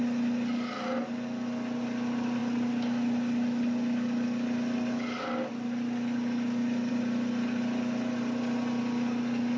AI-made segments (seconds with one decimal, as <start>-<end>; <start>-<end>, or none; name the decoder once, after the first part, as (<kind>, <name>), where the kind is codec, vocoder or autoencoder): none